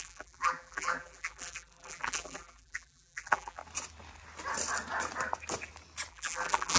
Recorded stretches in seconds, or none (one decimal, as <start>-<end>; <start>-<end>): 3.6-6.1